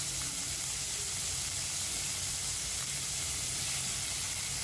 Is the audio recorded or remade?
recorded